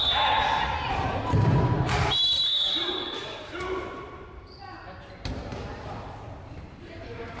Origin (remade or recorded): remade